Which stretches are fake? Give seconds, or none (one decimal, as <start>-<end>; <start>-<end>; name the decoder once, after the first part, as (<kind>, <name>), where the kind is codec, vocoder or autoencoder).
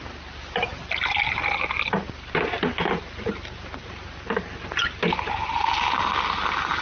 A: none